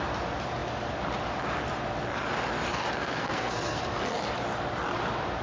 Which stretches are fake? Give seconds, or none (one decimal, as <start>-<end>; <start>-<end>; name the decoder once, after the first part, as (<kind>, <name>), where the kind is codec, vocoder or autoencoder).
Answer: 3.0-3.8 (codec, SNAC)